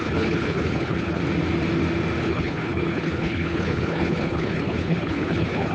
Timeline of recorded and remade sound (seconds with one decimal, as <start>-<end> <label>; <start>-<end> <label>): 0.0-1.2 remade; 1.2-2.2 recorded; 2.2-5.7 remade